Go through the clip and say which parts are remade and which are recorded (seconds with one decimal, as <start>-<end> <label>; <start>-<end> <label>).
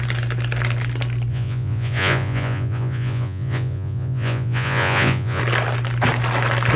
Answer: 0.0-1.3 recorded; 1.3-5.4 remade; 5.4-6.8 recorded